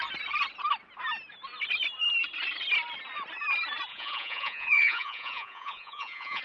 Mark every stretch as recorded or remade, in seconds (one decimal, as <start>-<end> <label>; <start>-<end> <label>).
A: 0.0-3.9 recorded; 3.9-6.4 remade

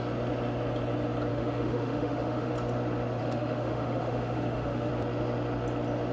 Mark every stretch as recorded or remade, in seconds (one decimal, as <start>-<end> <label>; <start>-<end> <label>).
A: 0.0-1.3 recorded; 1.3-2.5 remade; 2.5-3.2 recorded; 3.2-4.9 remade; 4.9-6.1 recorded

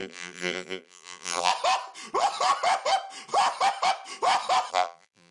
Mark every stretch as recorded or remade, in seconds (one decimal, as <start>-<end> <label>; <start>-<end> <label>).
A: 0.0-1.5 remade; 1.5-4.7 recorded; 4.7-5.3 remade

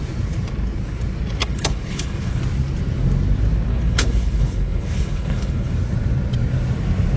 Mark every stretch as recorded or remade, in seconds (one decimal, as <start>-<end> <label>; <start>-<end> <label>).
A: 0.0-1.4 recorded; 1.4-2.4 remade; 2.4-3.7 recorded; 3.7-5.7 remade; 5.7-7.2 recorded

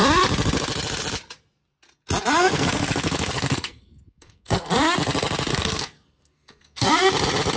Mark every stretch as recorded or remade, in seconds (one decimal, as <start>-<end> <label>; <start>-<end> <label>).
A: 0.0-2.4 recorded; 2.4-4.7 remade; 4.7-5.5 recorded; 5.5-6.9 remade; 6.9-7.6 recorded

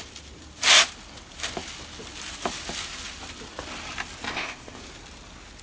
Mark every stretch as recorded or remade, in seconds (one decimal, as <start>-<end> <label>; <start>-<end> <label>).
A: 0.0-4.3 recorded; 4.3-4.8 remade; 4.8-5.6 recorded

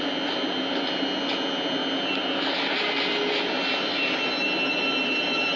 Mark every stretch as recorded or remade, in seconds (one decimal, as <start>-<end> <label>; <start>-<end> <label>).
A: 0.0-5.6 recorded

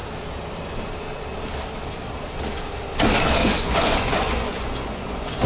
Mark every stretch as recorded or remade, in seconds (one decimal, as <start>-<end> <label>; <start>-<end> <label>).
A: 0.0-3.4 recorded; 3.4-5.5 remade